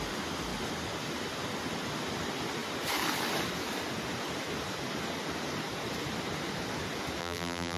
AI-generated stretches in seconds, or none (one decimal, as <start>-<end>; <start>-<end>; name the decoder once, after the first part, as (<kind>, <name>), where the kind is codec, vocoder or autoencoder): 7.2-7.8 (vocoder, BigVGAN v2)